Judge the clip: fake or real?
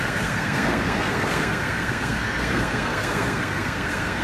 fake